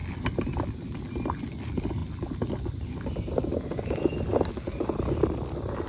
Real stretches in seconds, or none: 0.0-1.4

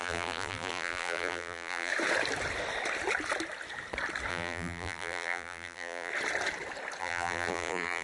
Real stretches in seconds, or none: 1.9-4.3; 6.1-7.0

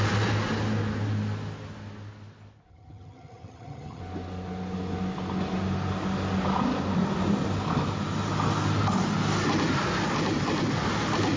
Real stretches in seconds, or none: 0.0-2.7; 4.0-11.4

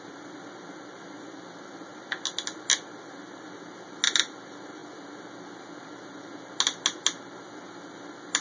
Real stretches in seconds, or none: 0.0-8.4

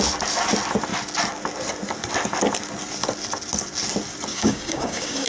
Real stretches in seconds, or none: 0.0-4.3

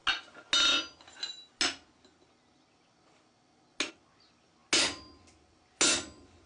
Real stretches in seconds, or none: 0.0-6.5

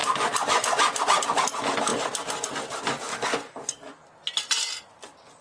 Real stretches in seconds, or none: 0.0-3.1; 4.0-5.4

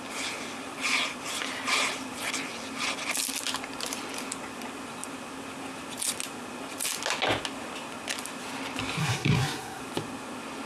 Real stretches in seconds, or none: 0.0-9.0; 9.8-10.7